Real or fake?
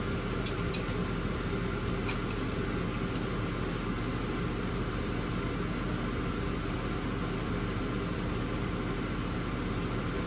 real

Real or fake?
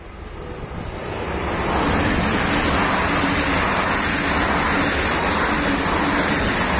real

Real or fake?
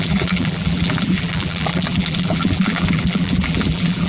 fake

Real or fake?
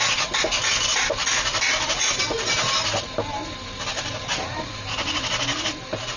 real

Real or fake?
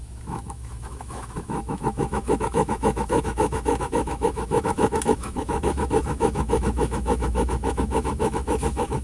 fake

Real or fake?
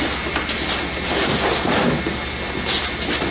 real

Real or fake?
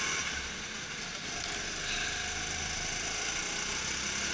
real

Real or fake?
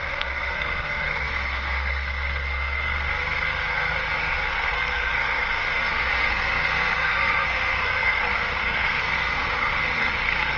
fake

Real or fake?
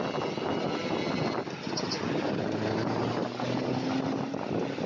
real